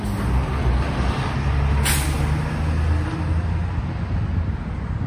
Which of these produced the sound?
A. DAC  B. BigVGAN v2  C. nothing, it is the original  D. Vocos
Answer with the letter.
C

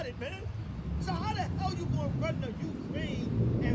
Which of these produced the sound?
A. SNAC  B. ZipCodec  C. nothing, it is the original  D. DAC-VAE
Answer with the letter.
C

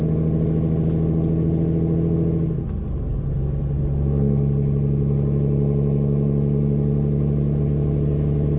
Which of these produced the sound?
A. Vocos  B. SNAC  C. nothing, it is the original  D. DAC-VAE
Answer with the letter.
C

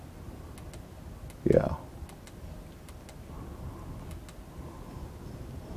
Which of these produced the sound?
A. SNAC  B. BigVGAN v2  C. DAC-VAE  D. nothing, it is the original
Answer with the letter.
D